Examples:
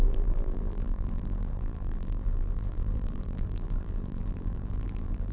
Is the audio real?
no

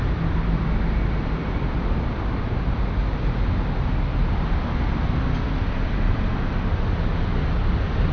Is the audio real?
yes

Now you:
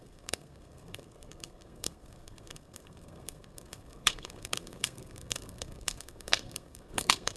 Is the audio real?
no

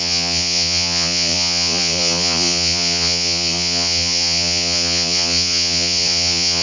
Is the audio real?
no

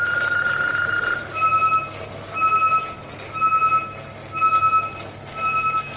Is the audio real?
yes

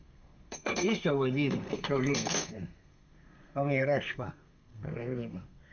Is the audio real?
no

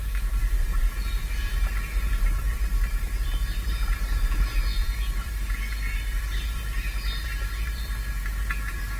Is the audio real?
no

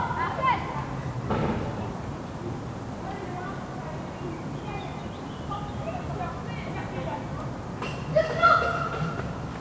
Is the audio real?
yes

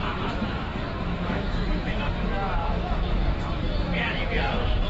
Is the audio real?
no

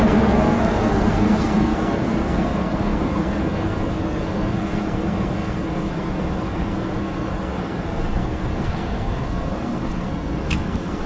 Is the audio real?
no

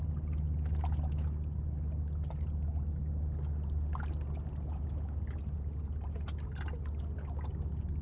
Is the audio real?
yes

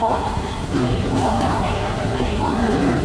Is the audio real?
no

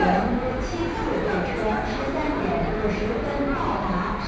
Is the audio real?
yes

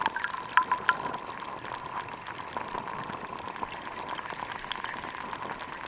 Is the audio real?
yes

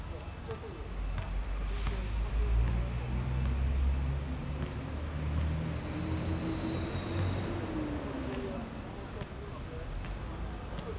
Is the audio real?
yes